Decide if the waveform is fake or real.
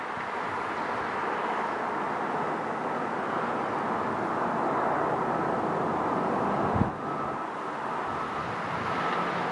real